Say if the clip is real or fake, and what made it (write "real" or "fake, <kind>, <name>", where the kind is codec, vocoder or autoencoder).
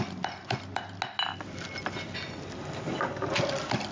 real